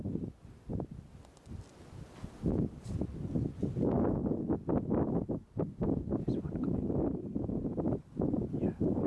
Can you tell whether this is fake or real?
real